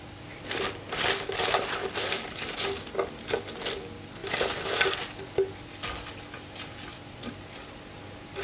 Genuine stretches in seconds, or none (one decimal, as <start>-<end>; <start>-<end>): 0.0-8.4